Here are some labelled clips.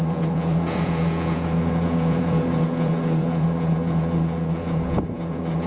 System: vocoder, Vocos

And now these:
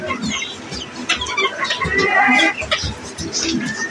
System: none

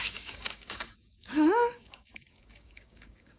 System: codec, DAC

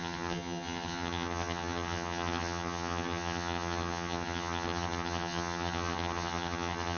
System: vocoder, HiFi-GAN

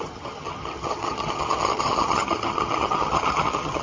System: vocoder, HiFi-GAN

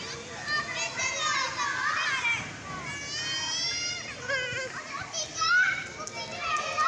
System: none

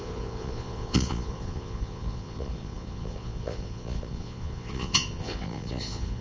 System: vocoder, Vocos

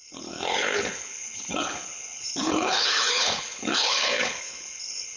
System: codec, HILCodec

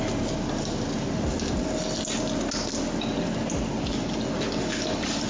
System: none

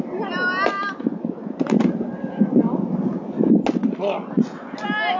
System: none